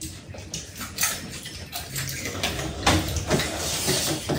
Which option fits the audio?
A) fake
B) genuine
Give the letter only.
B